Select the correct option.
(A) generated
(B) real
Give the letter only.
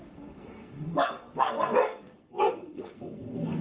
A